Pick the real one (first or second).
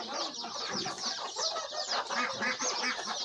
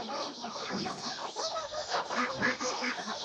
first